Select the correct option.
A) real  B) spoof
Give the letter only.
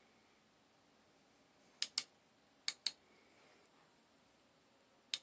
A